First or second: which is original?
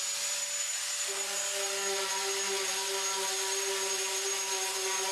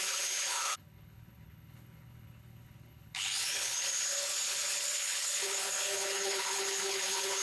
first